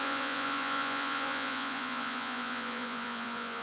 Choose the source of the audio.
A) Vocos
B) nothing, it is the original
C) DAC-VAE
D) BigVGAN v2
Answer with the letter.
A